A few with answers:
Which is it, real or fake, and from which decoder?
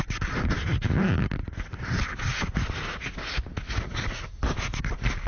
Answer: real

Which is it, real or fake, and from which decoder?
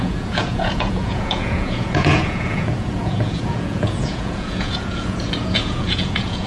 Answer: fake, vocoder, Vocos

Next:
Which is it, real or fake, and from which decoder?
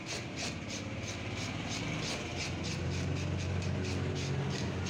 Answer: real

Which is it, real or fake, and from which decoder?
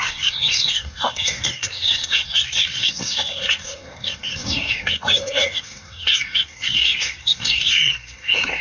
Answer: fake, codec, SNAC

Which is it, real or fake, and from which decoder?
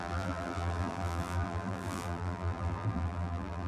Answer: fake, vocoder, BigVGAN v2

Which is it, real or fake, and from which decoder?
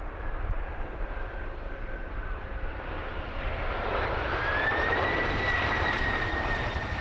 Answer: fake, vocoder, BigVGAN v2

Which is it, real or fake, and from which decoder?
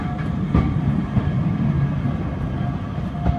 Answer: real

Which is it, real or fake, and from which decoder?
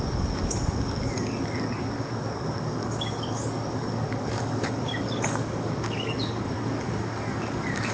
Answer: fake, codec, DAC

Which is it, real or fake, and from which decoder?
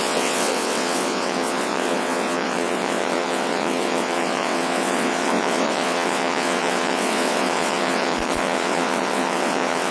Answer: fake, vocoder, WaveNeXt